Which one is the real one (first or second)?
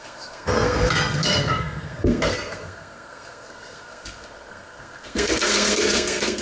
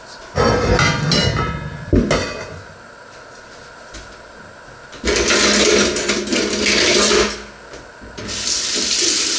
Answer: second